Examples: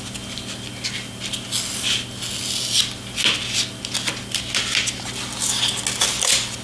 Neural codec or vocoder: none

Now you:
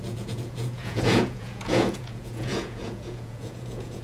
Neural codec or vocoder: vocoder, Vocos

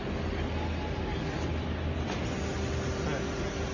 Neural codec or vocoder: none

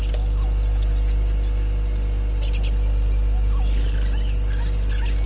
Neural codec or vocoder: none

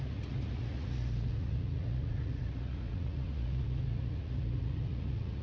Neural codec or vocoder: vocoder, Vocos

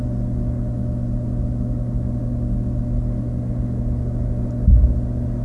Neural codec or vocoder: none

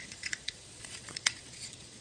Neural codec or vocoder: vocoder, Vocos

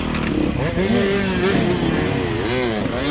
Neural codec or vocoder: none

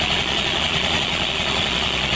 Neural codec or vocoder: vocoder, Vocos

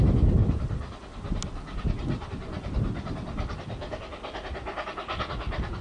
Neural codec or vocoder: none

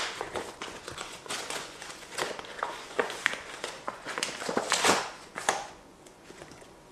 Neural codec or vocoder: vocoder, Vocos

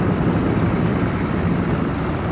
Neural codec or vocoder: none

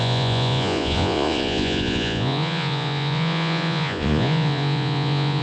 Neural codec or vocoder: vocoder, Vocos